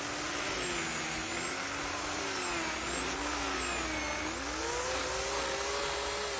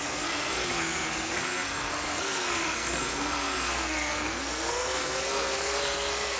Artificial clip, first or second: second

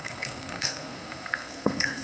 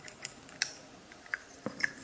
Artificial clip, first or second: first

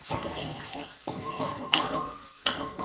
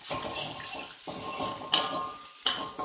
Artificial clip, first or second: first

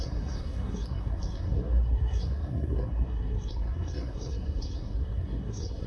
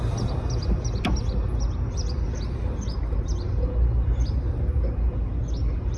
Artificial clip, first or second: first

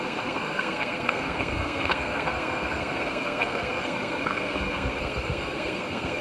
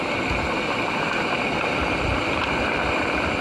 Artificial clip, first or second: first